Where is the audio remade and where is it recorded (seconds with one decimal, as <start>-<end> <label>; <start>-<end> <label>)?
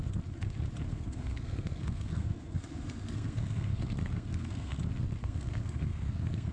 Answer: 0.0-0.9 recorded; 0.9-4.8 remade; 4.8-5.2 recorded; 5.2-6.5 remade